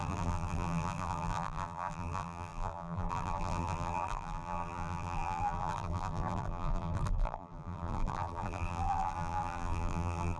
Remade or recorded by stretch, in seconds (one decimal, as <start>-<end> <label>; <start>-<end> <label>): 0.0-10.4 remade